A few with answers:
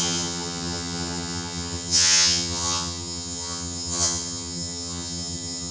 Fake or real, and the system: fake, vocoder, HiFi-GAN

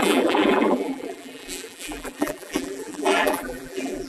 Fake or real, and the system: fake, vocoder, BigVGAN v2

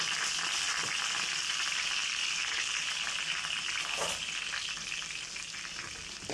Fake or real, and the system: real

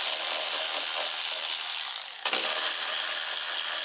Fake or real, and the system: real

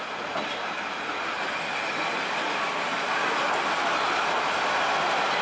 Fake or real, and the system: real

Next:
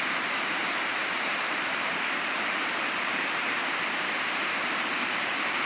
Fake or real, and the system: fake, vocoder, BigVGAN v2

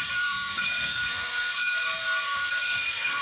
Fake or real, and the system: fake, codec, SNAC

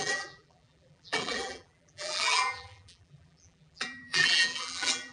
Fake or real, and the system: fake, vocoder, BigVGAN v2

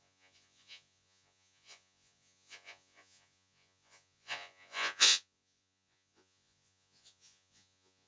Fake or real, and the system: fake, vocoder, Vocos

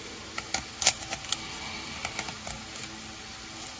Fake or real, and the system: real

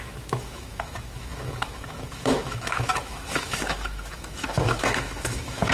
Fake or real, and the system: fake, autoencoder, DAC-VAE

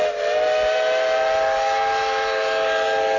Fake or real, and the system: real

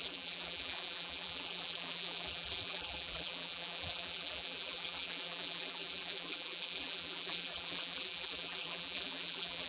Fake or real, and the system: fake, vocoder, BigVGAN v2